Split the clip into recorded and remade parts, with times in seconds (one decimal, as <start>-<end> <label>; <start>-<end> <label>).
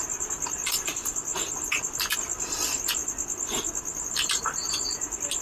0.0-5.4 recorded